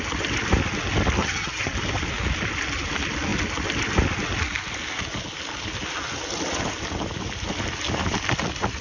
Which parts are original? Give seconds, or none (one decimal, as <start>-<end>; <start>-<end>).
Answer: 0.0-1.2; 1.7-8.8